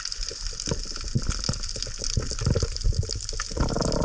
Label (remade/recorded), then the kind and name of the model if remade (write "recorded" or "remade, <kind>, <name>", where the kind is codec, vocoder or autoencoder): recorded